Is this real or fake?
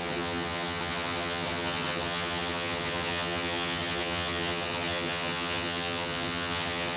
fake